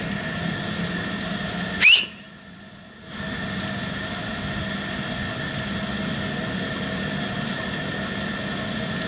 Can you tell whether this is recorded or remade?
recorded